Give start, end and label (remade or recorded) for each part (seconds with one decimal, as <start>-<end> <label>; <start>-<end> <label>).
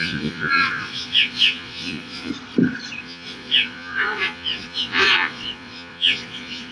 0.0-2.3 remade; 2.3-3.0 recorded; 3.0-6.7 remade